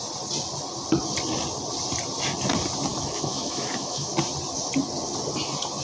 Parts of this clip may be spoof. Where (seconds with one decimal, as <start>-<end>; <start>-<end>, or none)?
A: 2.9-4.1